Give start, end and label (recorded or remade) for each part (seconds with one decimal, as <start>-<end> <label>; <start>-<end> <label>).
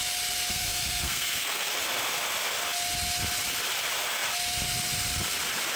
0.0-0.5 recorded; 0.5-1.7 remade; 1.7-5.8 recorded